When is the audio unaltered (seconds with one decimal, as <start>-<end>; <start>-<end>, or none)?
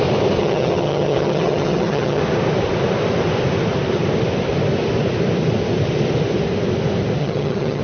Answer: 0.0-0.4; 2.2-7.2